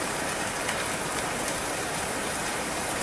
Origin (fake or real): fake